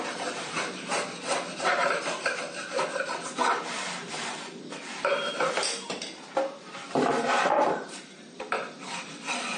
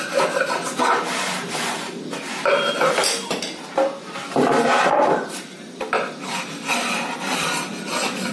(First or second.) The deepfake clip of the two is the first